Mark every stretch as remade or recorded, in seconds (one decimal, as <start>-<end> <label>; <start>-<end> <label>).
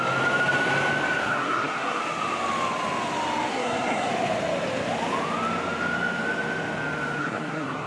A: 0.0-1.2 recorded; 1.2-2.0 remade; 2.0-3.5 recorded; 3.5-4.1 remade; 4.1-7.2 recorded; 7.2-7.9 remade